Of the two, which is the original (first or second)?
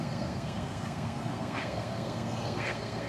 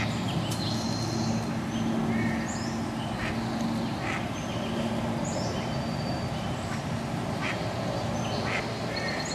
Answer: second